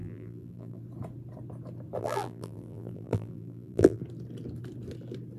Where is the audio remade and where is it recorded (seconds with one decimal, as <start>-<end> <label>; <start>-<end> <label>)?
0.0-0.8 remade; 0.8-2.0 recorded; 2.0-4.0 remade; 4.0-5.4 recorded